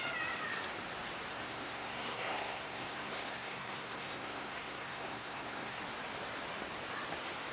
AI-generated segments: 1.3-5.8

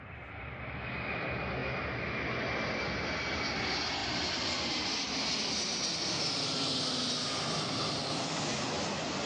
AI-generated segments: 4.0-6.2

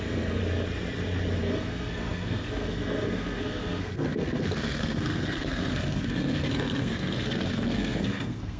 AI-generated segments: 0.0-0.4; 1.4-8.6

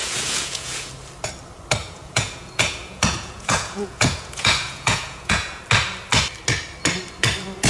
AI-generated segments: 0.0-0.9; 1.8-5.6

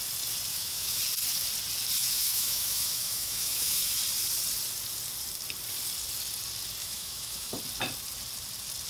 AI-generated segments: 0.5-1.0; 2.0-4.0; 6.8-7.5